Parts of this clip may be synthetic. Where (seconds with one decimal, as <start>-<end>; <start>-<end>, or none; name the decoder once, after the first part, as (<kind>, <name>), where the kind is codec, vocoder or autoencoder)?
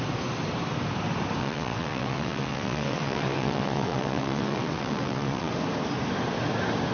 1.4-5.5 (vocoder, WaveNeXt)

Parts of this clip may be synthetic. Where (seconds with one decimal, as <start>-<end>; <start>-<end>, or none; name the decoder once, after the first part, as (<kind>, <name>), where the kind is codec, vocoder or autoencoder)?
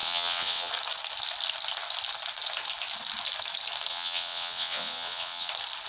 0.0-0.7 (vocoder, WaveNeXt); 3.9-5.5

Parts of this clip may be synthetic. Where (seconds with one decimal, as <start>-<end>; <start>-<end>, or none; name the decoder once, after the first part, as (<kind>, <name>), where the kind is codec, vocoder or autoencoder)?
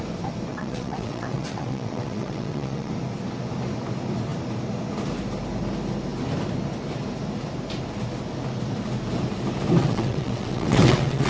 0.5-2.9 (vocoder, WaveNeXt); 9.8-11.3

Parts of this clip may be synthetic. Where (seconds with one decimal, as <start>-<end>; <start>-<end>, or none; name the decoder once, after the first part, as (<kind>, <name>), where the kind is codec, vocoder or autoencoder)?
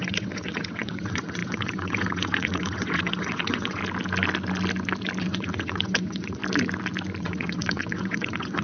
0.0-3.8 (vocoder, WaveNeXt); 5.2-6.4; 7.2-8.6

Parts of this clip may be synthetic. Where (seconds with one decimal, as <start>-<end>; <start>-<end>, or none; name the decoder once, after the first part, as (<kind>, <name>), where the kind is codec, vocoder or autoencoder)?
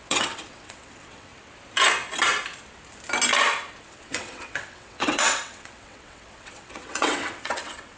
0.0-1.3 (vocoder, WaveNeXt); 3.8-8.0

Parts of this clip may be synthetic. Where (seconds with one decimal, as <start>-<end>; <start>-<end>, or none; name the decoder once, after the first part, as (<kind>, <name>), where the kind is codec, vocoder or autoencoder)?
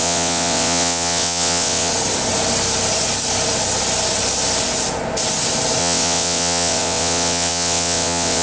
0.0-1.9 (vocoder, WaveNeXt); 5.8-8.4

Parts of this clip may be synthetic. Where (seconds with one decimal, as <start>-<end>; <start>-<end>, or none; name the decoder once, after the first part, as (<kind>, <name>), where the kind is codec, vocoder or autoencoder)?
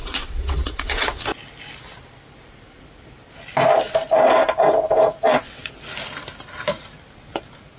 0.0-1.2 (vocoder, WaveNeXt); 5.3-5.8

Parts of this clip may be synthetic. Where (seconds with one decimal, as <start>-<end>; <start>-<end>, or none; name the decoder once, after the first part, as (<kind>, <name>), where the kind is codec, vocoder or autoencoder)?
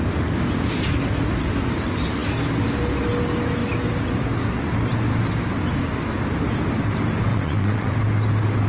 7.3-7.9 (vocoder, WaveNeXt)